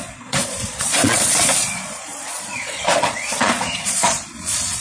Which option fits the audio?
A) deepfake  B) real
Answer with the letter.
A